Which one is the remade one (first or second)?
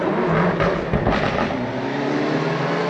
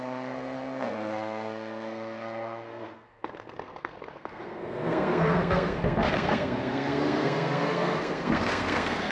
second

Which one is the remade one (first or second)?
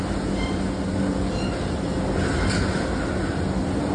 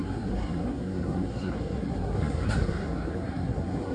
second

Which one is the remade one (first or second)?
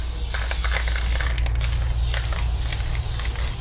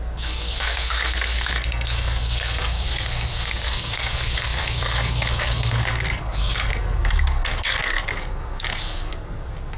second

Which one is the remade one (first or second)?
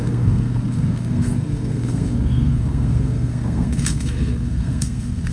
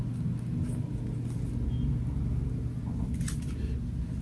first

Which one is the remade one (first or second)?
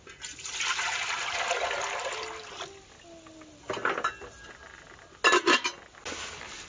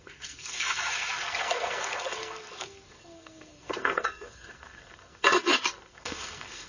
second